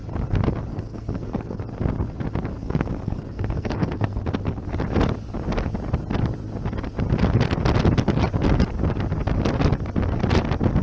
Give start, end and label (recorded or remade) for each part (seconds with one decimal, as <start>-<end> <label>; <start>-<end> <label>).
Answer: 0.0-0.7 recorded; 0.7-1.6 remade; 1.6-2.5 recorded; 2.5-4.2 remade; 4.2-10.8 recorded

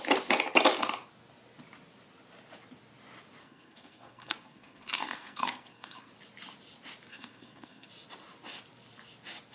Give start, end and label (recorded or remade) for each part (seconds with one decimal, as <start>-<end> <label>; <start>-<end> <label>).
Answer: 0.0-3.4 recorded; 3.4-6.1 remade; 6.1-7.1 recorded; 7.1-7.9 remade; 7.9-9.5 recorded